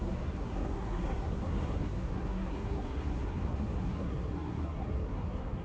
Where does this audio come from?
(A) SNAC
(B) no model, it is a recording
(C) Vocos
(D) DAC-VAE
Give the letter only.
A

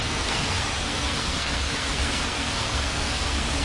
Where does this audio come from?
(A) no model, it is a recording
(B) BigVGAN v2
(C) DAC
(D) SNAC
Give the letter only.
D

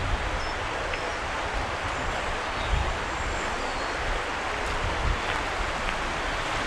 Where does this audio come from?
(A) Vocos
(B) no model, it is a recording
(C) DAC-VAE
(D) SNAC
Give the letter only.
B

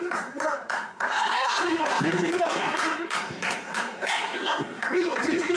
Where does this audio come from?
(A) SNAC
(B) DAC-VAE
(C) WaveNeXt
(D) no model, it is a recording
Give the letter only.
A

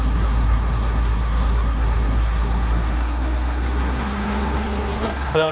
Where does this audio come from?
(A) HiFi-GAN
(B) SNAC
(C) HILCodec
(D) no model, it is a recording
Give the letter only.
B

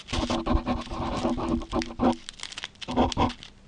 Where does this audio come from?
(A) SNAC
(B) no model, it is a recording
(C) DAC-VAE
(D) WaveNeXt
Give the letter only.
B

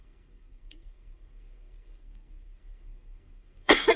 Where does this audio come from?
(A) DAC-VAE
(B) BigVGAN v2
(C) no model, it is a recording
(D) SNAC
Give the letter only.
D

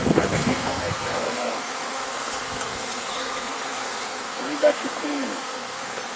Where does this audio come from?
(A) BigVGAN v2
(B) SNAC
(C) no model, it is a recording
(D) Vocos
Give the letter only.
B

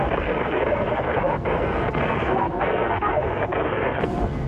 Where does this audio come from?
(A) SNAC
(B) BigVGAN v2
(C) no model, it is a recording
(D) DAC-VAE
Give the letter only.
A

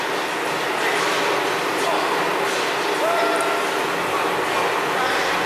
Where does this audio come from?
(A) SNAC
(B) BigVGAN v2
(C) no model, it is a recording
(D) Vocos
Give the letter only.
C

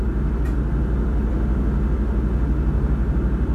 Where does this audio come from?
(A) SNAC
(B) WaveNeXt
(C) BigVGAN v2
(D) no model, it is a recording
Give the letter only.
D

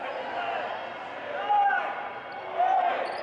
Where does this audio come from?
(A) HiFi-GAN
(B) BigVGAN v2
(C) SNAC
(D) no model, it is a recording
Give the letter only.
D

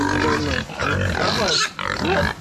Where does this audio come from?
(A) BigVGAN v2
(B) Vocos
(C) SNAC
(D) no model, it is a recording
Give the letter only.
D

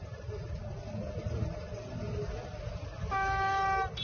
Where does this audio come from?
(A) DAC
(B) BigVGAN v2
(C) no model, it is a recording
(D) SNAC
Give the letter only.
C